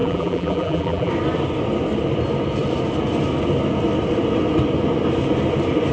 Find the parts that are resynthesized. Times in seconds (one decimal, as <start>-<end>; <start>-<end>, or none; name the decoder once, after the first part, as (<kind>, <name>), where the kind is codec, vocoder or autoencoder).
0.0-1.1 (vocoder, BigVGAN v2)